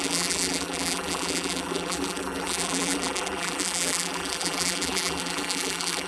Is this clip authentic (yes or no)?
no